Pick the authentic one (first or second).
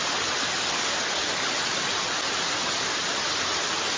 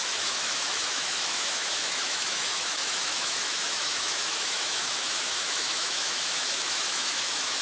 first